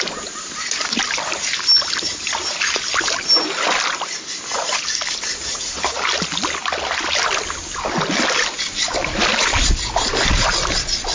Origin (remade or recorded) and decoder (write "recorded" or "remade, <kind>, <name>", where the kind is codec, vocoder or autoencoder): recorded